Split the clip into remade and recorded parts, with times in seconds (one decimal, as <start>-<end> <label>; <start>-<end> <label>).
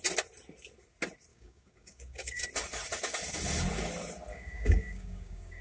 0.0-1.3 recorded; 1.3-2.4 remade; 2.4-4.3 recorded; 4.3-5.6 remade